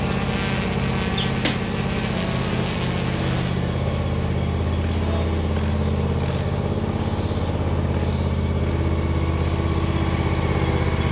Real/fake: real